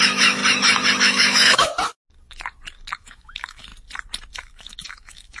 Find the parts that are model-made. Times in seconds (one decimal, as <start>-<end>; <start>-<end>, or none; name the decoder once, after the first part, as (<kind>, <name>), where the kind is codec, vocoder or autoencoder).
0.0-0.4 (autoencoder, DAC-VAE); 1.0-1.7; 2.9-3.7; 4.3-5.4